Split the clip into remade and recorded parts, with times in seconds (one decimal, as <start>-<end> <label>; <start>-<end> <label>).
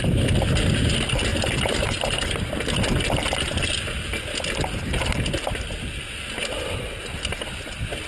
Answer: 0.0-8.1 recorded